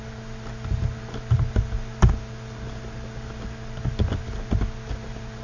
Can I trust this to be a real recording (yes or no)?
yes